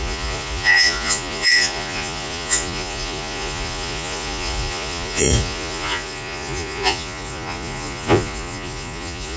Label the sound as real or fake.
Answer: fake